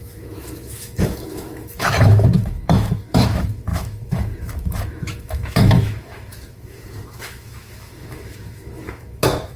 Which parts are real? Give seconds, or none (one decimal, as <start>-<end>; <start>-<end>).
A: none

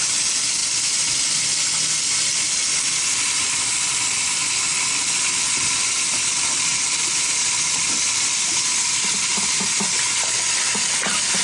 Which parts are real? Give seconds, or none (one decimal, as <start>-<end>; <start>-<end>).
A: 0.0-11.4

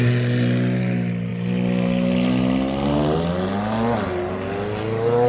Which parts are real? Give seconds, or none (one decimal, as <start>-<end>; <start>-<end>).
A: 0.0-5.3

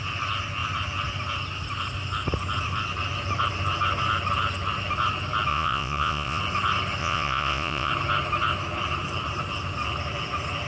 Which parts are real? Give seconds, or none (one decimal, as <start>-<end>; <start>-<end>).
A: 0.0-5.5; 6.4-7.0; 7.9-10.7

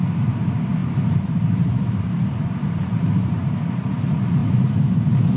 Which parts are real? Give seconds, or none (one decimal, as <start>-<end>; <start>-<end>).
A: 0.0-0.8; 4.0-4.4; 5.0-5.4